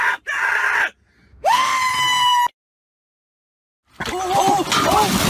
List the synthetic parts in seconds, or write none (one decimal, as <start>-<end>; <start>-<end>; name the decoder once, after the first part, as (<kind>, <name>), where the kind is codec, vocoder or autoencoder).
1.3-1.8 (autoencoder, DAC-VAE)